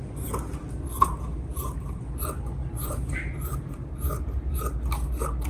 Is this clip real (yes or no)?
yes